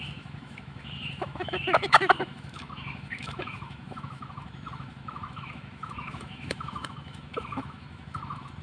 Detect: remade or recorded remade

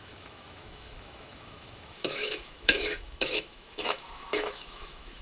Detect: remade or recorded remade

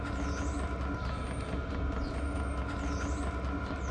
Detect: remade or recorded recorded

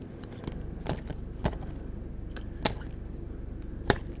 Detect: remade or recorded recorded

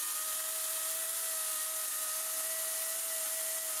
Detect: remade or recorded recorded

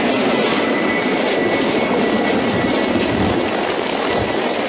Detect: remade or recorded recorded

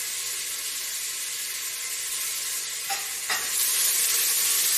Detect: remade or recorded recorded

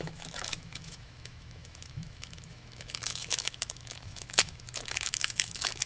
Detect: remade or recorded remade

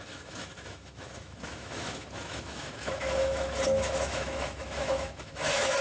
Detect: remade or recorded remade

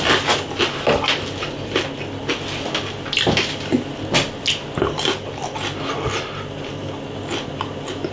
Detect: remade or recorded recorded